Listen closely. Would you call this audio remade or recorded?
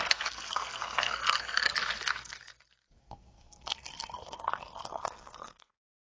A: remade